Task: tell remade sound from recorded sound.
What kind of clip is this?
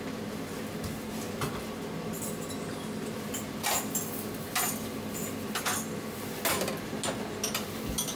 recorded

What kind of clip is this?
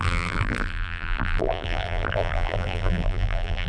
remade